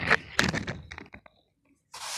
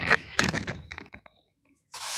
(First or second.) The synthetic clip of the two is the second